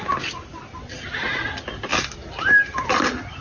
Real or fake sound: real